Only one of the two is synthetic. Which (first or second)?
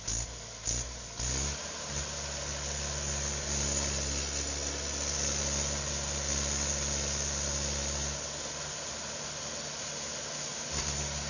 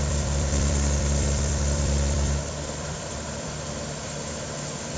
second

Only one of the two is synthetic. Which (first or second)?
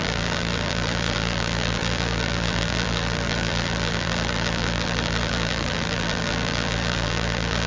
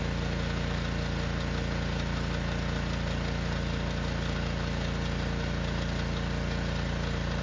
first